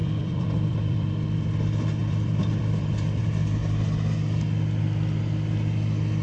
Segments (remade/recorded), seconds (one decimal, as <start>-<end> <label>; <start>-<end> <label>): 0.0-1.1 remade; 1.1-2.0 recorded; 2.0-3.2 remade; 3.2-6.2 recorded